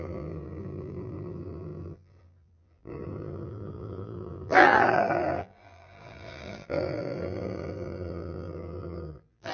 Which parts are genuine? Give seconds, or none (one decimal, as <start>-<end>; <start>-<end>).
none